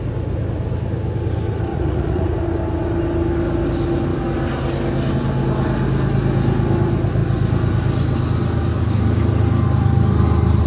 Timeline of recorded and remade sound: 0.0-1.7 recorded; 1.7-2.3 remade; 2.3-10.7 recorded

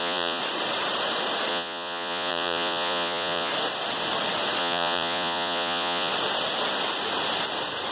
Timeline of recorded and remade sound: 0.0-0.4 remade; 0.4-1.5 recorded; 1.5-3.5 remade; 3.5-4.6 recorded; 4.6-6.1 remade; 6.1-7.9 recorded

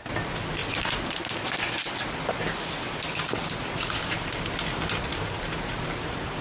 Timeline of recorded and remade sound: 0.0-6.4 recorded

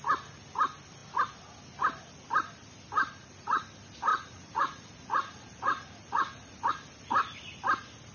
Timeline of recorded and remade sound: 0.0-3.0 recorded; 3.0-3.6 remade; 3.6-4.1 recorded; 4.1-6.7 remade; 6.7-8.1 recorded

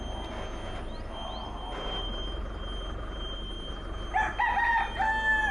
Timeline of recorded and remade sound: 0.0-1.4 recorded; 1.4-4.3 remade; 4.3-5.5 recorded

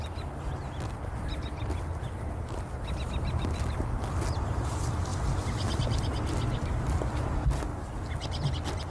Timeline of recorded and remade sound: 0.0-8.9 recorded